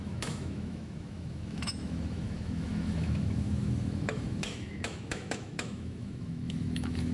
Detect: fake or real fake